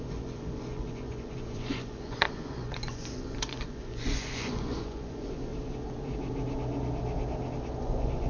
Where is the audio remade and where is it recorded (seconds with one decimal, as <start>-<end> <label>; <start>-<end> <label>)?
0.0-5.5 remade; 5.5-7.8 recorded; 7.8-8.3 remade